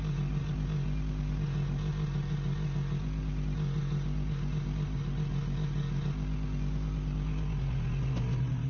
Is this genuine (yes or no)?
yes